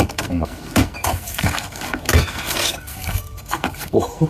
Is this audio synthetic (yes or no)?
yes